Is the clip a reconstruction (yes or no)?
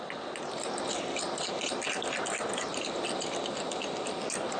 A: no